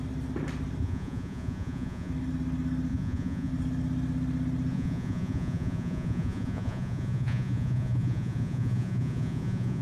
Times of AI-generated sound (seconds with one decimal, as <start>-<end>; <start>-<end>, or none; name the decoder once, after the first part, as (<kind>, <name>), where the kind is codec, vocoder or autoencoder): 0.8-2.1 (vocoder, Vocos); 2.9-3.5; 4.7-9.8